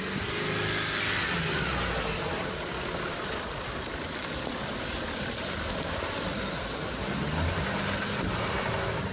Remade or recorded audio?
recorded